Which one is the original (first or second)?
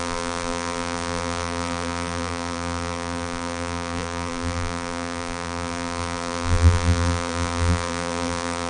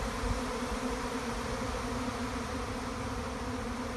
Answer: second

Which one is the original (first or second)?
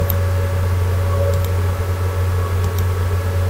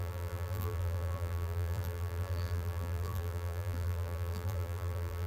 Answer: first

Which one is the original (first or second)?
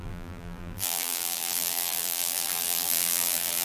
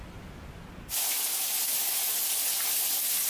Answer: second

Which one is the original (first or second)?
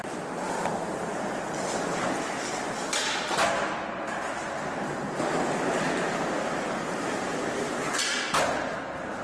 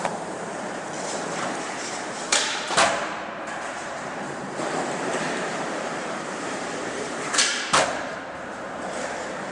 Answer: first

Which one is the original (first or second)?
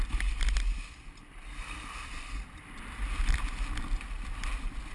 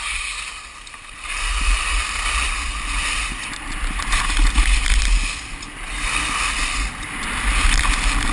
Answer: second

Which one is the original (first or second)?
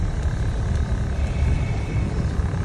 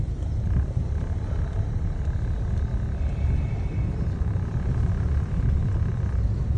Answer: second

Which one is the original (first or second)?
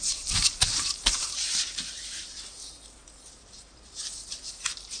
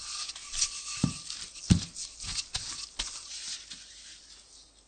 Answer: second